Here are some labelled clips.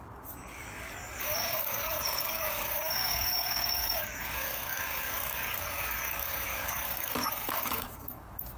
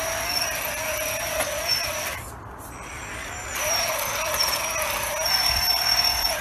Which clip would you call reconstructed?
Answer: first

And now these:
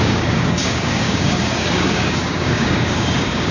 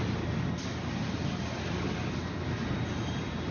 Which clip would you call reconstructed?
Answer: first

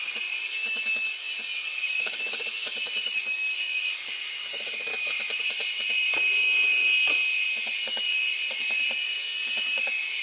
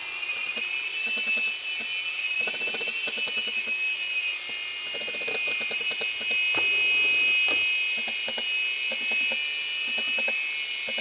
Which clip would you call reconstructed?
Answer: first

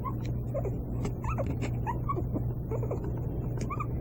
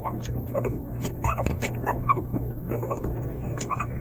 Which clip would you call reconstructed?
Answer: second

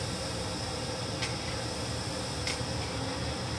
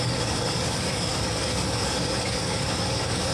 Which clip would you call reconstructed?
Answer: second